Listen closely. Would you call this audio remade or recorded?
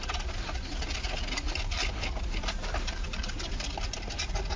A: recorded